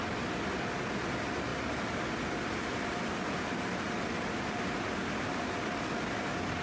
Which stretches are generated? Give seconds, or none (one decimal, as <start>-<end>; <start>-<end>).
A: none